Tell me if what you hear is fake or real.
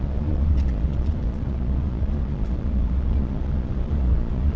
fake